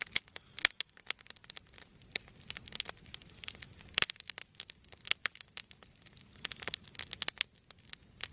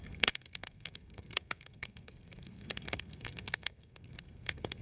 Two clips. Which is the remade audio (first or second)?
second